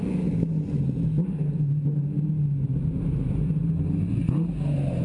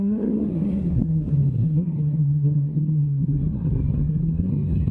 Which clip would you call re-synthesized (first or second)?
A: second